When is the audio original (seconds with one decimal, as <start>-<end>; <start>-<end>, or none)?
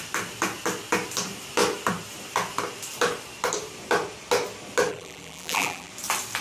0.0-4.9; 5.9-6.4